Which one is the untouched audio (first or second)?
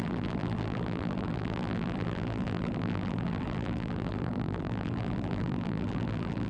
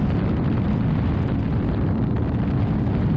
second